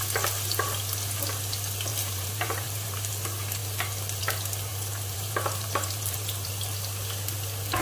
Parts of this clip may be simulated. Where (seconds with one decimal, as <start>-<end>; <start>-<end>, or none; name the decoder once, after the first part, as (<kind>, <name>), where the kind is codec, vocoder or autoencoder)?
1.9-3.1 (vocoder, BigVGAN v2); 4.7-6.5